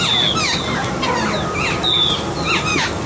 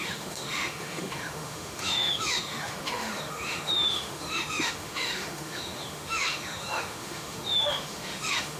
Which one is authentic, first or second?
first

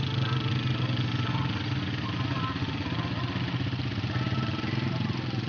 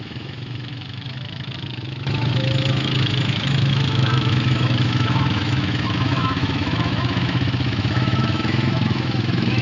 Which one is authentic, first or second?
first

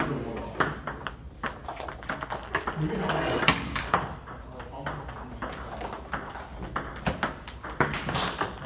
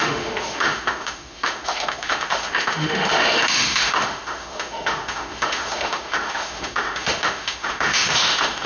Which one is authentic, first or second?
first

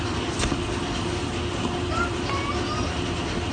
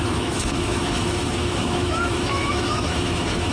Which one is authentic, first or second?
first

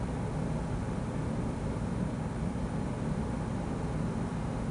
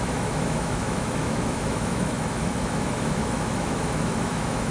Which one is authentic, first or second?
first